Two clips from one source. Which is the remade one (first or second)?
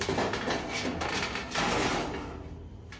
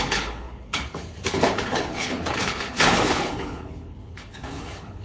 second